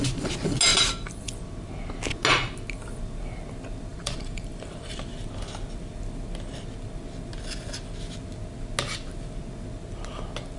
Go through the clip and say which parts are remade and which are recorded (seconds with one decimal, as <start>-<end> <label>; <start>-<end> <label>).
0.0-0.7 recorded; 0.7-1.3 remade; 1.3-3.9 recorded; 3.9-5.3 remade; 5.3-10.6 recorded